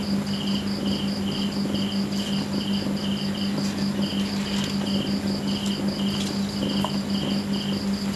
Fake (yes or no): no